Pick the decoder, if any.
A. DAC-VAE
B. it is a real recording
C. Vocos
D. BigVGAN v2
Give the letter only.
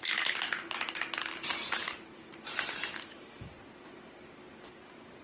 B